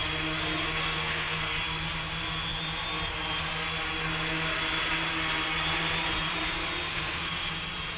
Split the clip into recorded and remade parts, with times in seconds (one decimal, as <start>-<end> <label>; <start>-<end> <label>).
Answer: 0.0-0.8 recorded; 0.8-1.6 remade; 1.6-6.9 recorded; 6.9-7.5 remade; 7.5-8.0 recorded